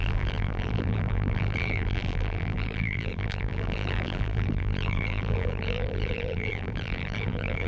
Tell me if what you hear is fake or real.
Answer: fake